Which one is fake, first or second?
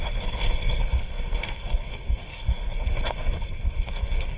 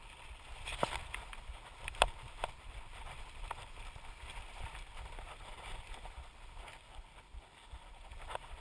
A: first